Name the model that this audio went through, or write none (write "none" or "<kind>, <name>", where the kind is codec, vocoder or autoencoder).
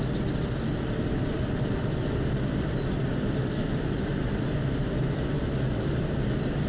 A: none